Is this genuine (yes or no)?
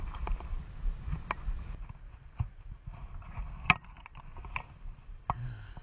yes